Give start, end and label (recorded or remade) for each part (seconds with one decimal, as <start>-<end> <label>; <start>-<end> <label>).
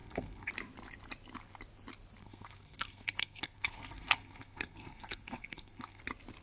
0.0-0.5 remade; 0.5-2.2 recorded; 2.2-6.0 remade; 6.0-6.4 recorded